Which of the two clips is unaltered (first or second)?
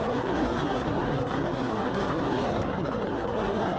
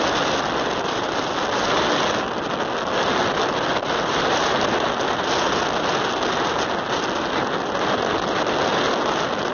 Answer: second